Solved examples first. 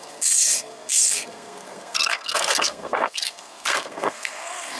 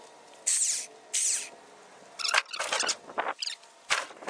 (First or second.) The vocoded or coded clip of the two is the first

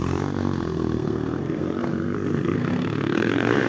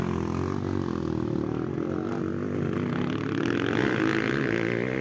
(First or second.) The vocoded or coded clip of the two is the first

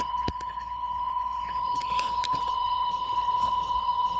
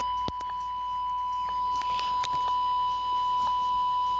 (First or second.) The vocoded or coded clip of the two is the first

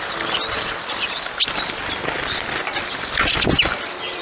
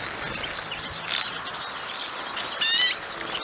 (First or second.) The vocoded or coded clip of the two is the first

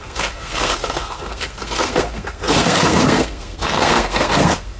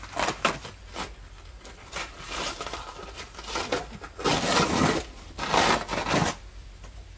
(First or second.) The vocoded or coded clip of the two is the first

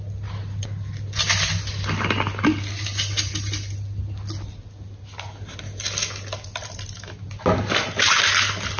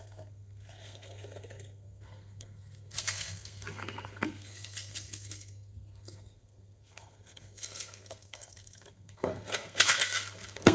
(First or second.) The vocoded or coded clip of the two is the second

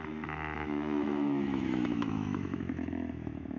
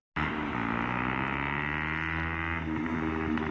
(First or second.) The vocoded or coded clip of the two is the first